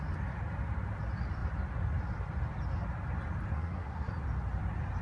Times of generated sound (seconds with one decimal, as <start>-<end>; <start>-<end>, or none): 3.5-4.1